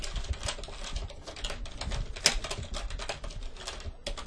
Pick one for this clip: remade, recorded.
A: recorded